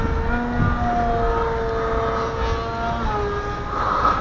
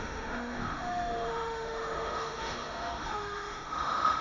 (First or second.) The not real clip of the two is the second